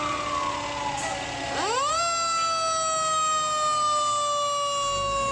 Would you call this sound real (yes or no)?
yes